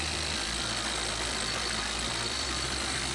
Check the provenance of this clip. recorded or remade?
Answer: remade